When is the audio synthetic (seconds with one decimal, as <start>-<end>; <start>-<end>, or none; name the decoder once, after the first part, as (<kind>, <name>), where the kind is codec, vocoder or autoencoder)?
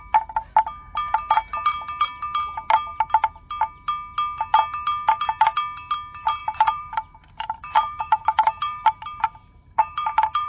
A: 6.4-10.5 (vocoder, BigVGAN v2)